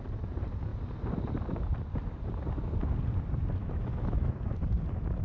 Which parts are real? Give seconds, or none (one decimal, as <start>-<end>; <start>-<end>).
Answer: 0.0-3.6; 4.3-5.2